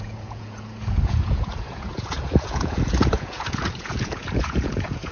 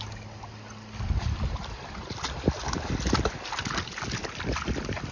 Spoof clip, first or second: first